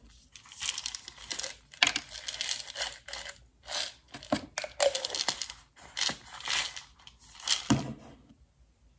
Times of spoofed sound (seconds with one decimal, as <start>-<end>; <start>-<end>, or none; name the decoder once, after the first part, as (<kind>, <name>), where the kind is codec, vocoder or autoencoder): none